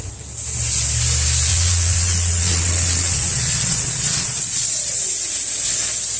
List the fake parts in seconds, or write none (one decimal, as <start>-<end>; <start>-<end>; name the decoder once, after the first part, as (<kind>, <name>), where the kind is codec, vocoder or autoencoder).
1.5-5.0 (vocoder, Vocos)